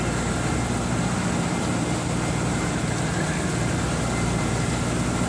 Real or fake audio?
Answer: real